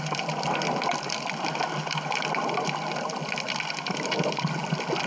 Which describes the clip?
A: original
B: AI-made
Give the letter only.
A